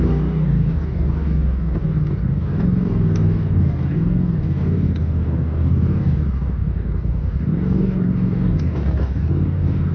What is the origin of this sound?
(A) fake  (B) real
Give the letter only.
A